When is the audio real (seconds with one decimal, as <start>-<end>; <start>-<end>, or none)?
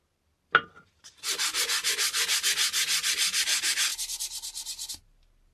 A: 0.0-5.5